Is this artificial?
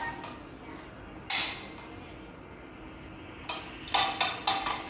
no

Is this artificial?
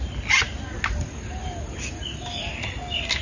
no